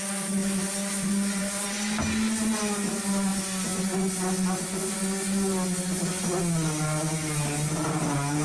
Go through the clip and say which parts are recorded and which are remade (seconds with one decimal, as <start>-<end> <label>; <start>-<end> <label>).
0.0-8.4 recorded